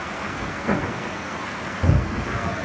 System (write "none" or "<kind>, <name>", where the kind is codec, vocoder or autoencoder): codec, SNAC